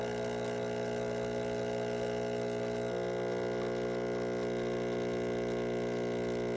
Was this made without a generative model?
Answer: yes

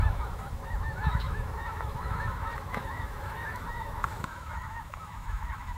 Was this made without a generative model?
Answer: no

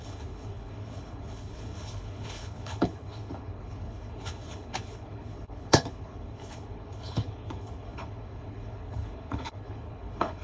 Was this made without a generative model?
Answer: no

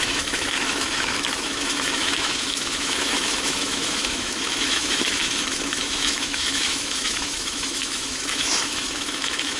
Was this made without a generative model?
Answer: no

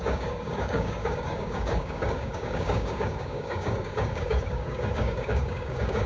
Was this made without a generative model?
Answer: no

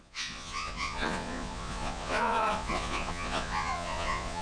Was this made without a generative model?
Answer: no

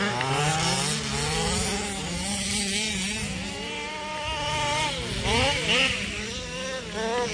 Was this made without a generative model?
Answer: yes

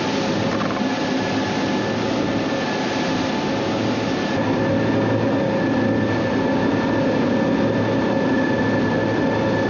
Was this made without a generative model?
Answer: yes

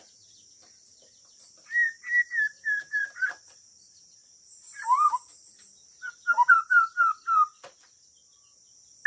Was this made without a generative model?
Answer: yes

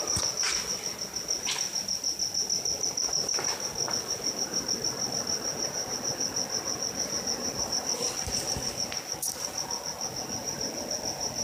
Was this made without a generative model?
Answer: yes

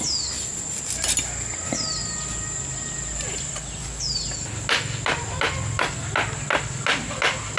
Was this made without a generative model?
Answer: yes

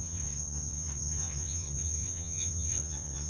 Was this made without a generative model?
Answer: no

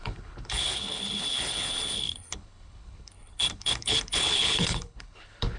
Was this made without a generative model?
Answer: no